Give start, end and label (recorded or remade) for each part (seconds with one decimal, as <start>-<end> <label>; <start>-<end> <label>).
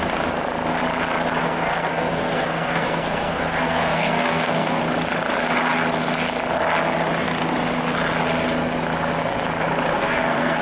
0.0-1.4 recorded; 1.4-4.8 remade; 4.8-9.9 recorded; 9.9-10.6 remade